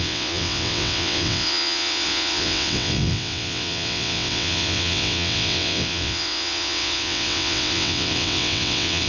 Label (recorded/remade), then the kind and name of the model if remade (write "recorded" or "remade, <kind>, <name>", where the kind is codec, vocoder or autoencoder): remade, vocoder, WaveNeXt